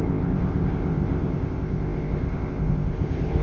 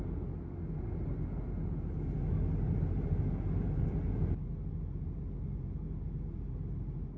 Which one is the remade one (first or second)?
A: first